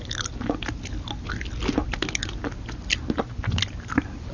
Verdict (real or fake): real